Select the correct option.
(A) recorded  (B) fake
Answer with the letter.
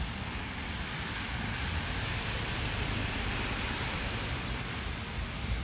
B